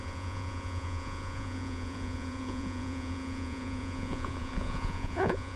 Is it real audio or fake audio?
fake